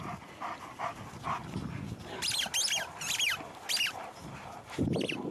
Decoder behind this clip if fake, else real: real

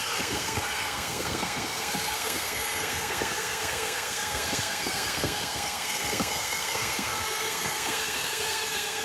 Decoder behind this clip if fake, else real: fake, codec, SNAC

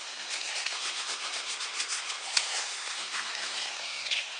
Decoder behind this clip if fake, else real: fake, codec, SNAC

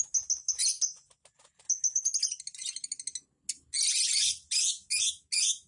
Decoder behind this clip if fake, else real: real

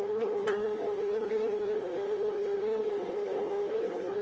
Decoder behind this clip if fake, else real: fake, codec, SNAC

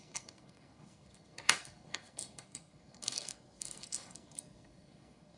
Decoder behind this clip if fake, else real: fake, codec, SNAC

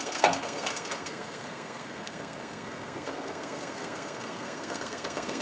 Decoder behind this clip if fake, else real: fake, codec, SNAC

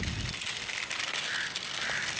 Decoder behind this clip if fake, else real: real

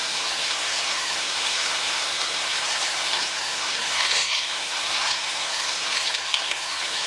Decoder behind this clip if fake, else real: fake, codec, SNAC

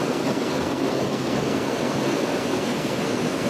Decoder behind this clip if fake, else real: fake, codec, SNAC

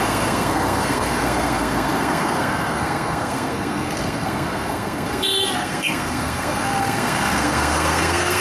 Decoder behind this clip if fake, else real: fake, codec, SNAC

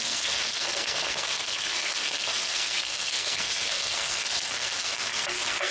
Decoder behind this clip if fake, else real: fake, codec, SNAC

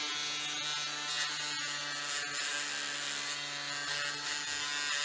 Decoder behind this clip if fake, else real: real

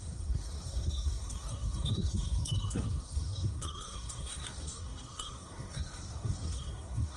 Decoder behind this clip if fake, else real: fake, codec, SNAC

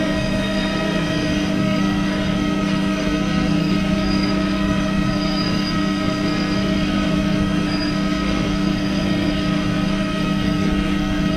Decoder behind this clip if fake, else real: fake, codec, SNAC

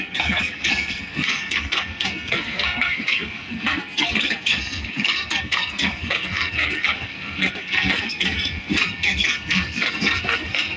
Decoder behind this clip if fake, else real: fake, codec, SNAC